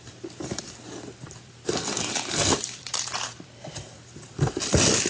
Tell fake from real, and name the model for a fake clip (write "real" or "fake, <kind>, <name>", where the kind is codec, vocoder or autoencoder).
fake, vocoder, BigVGAN v2